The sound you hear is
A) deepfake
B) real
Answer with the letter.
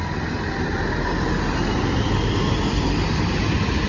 B